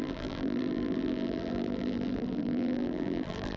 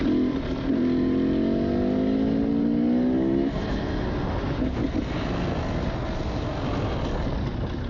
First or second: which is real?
second